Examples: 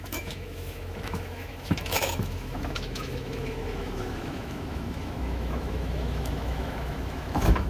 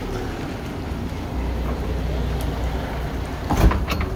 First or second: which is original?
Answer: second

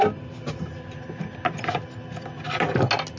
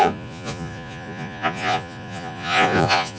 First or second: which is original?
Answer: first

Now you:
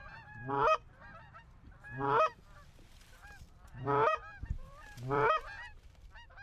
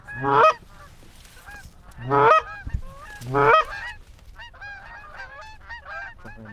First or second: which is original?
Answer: second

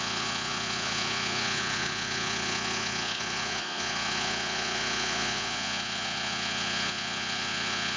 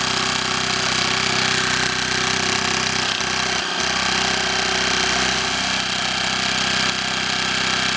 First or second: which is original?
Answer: second